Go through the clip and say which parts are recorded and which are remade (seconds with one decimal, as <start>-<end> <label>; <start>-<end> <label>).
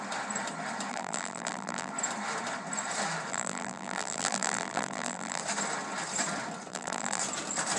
0.0-0.9 recorded; 0.9-1.9 remade; 1.9-3.3 recorded; 3.3-5.4 remade; 5.4-6.7 recorded; 6.7-7.2 remade; 7.2-7.8 recorded